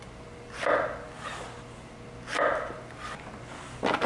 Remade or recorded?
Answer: recorded